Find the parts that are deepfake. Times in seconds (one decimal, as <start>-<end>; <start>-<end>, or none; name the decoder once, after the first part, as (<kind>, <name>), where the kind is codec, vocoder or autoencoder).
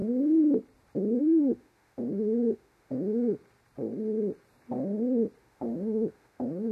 1.2-3.4 (autoencoder, DAC-VAE); 5.4-6.7